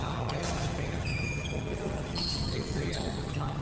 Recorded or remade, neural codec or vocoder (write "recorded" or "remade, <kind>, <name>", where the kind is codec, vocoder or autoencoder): remade, vocoder, HiFi-GAN